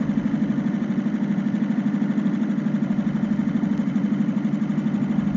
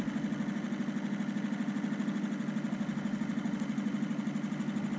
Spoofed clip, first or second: first